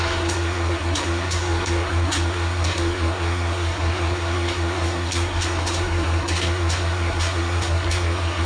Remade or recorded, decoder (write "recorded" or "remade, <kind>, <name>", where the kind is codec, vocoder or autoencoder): remade, codec, SNAC